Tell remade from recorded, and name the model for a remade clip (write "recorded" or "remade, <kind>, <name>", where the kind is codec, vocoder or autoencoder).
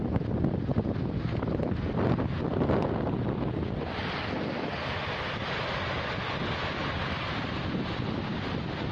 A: recorded